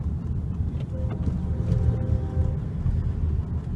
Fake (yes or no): no